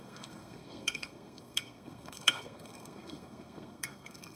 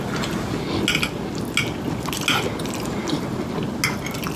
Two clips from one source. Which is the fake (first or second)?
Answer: first